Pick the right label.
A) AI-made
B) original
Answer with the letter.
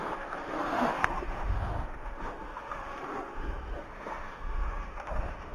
A